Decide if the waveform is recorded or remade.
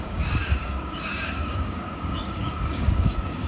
remade